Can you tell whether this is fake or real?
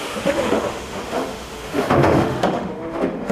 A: fake